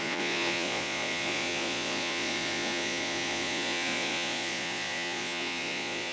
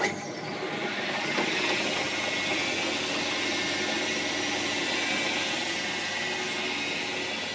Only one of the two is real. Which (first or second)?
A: second